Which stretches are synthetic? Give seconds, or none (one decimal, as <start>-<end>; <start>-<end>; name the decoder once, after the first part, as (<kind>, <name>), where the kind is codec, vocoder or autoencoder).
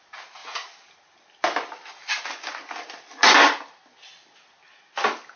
none